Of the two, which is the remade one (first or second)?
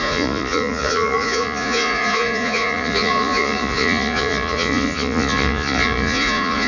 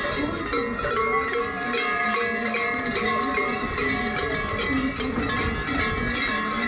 first